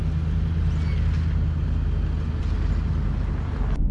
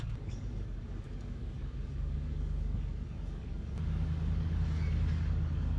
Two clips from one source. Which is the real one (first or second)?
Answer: first